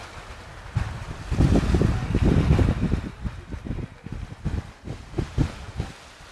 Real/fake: real